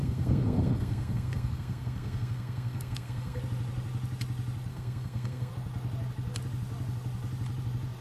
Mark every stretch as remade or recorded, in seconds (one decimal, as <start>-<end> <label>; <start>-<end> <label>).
0.0-3.4 remade; 3.4-4.7 recorded; 4.7-5.5 remade; 5.5-8.0 recorded

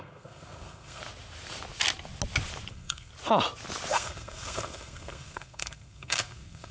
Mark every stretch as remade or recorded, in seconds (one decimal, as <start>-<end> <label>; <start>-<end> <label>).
0.0-1.0 remade; 1.0-2.7 recorded; 2.7-3.1 remade; 3.1-3.9 recorded; 3.9-6.7 remade

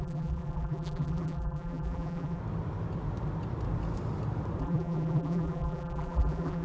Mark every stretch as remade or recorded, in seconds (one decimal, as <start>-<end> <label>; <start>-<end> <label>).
0.0-2.4 remade; 2.4-4.6 recorded; 4.6-6.6 remade

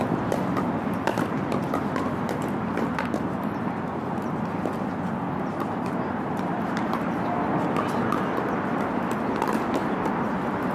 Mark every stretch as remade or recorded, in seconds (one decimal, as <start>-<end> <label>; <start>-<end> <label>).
0.0-5.5 recorded; 5.5-7.1 remade; 7.1-10.7 recorded

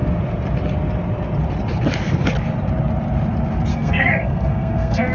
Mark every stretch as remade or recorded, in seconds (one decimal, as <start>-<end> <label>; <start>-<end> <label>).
0.0-3.7 recorded; 3.7-5.1 remade